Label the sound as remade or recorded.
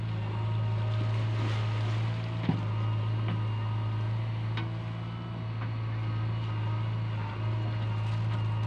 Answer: recorded